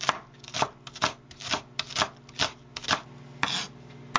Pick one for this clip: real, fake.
real